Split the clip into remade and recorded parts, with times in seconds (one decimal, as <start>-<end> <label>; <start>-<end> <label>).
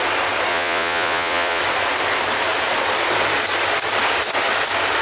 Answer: 0.0-0.5 recorded; 0.5-1.6 remade; 1.6-5.0 recorded